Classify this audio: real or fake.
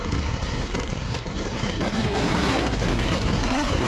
fake